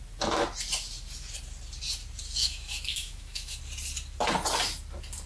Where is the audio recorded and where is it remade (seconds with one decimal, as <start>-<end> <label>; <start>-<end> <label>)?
0.0-2.4 recorded; 2.4-3.6 remade; 3.6-5.3 recorded